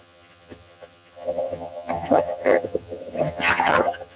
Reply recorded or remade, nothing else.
remade